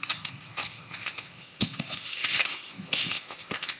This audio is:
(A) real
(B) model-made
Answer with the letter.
B